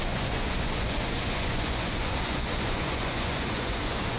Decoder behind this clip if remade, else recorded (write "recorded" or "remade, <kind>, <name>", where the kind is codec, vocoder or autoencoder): remade, vocoder, Vocos